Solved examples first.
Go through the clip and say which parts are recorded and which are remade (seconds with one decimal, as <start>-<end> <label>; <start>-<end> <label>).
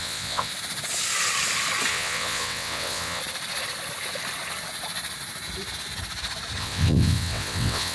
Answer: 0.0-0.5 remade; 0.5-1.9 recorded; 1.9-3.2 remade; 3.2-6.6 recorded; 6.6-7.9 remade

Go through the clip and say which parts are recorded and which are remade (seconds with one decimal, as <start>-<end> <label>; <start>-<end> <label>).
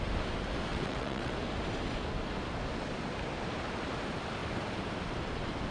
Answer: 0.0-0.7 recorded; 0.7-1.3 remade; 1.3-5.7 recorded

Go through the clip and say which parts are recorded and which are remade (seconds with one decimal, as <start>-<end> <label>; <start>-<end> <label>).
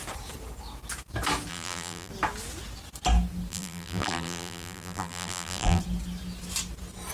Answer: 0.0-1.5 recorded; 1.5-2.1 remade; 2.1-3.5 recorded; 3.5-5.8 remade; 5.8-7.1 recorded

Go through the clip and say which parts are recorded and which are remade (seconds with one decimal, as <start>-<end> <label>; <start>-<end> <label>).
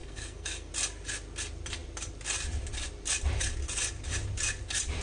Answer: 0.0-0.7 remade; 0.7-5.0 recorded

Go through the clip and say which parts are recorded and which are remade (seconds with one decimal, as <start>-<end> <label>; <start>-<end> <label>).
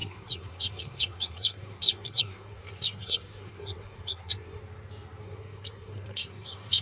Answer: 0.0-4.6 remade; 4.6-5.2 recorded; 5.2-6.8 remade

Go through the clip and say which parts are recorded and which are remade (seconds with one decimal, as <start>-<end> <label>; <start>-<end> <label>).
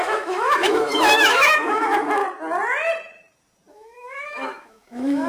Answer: 0.0-2.2 remade; 2.2-3.7 recorded; 3.7-5.3 remade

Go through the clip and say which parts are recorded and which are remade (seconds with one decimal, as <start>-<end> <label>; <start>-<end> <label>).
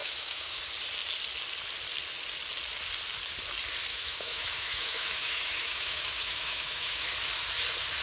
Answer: 0.0-0.6 remade; 0.6-3.9 recorded; 3.9-7.1 remade; 7.1-8.0 recorded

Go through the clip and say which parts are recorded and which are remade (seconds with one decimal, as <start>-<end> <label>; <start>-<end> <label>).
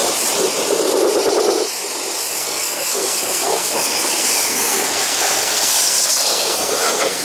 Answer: 0.0-2.3 recorded; 2.3-7.2 remade